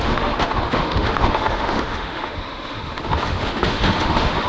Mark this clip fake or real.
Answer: fake